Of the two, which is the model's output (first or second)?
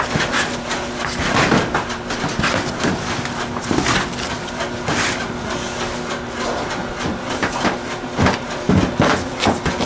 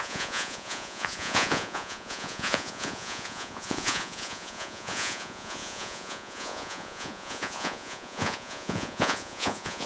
second